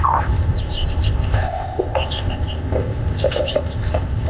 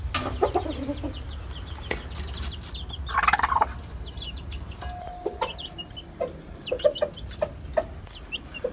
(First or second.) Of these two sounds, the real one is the second